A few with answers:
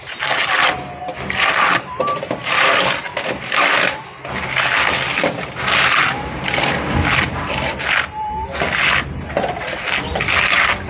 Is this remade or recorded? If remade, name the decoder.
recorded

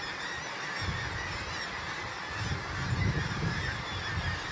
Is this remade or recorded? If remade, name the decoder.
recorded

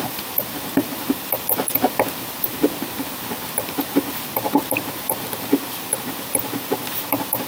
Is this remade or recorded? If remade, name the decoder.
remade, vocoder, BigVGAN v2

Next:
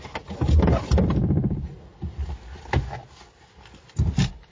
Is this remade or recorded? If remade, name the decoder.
recorded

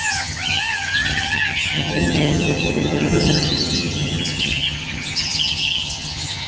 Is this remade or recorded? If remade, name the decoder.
remade, vocoder, HiFi-GAN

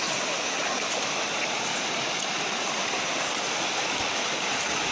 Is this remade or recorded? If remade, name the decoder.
recorded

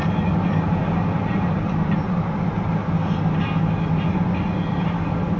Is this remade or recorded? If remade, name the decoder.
recorded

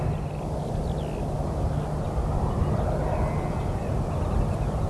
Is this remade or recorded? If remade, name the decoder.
recorded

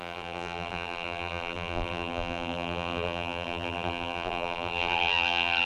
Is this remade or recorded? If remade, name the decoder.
remade, vocoder, BigVGAN v2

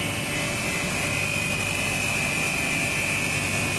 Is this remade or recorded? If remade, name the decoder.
recorded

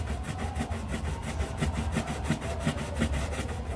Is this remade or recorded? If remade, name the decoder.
recorded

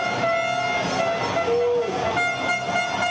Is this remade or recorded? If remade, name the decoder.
recorded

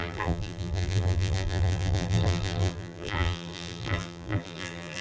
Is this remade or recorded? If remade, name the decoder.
remade, vocoder, BigVGAN v2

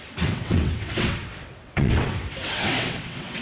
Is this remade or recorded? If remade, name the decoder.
remade, vocoder, WaveNeXt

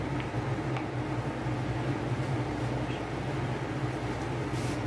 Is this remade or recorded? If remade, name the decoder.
recorded